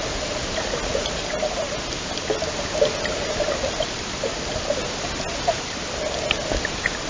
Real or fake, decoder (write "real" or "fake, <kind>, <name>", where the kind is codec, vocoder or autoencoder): real